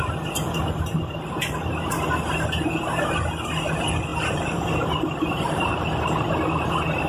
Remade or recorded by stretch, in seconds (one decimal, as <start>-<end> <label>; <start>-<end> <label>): 0.0-0.8 recorded; 0.8-1.9 remade; 1.9-4.1 recorded; 4.1-7.1 remade